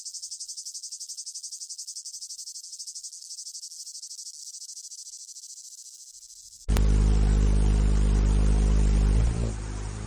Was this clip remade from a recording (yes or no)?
no